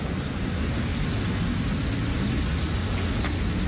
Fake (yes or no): no